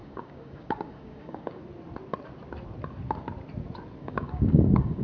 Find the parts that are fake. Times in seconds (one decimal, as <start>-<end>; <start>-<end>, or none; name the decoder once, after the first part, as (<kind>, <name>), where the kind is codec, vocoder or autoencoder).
0.0-1.6 (codec, DAC); 4.0-5.0